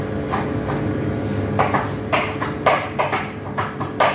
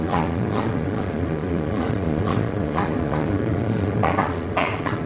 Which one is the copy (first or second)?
second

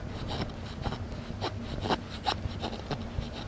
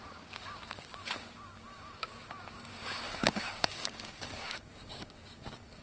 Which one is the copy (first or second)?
second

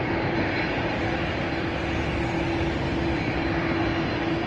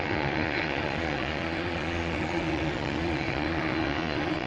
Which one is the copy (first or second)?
second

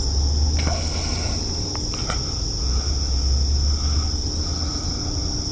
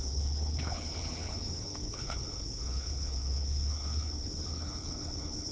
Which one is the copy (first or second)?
second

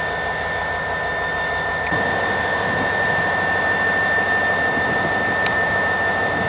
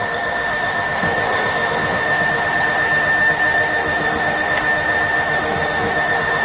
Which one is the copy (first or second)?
second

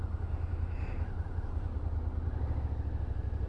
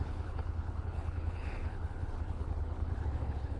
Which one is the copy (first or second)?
second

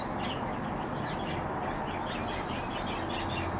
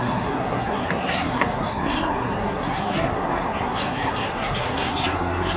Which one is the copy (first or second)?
second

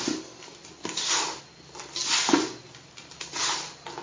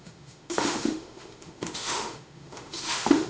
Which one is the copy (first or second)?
second